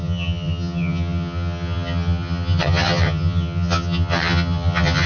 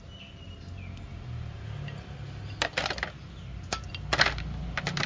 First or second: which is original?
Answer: second